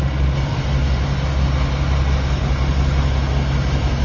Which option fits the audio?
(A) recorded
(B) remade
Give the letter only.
A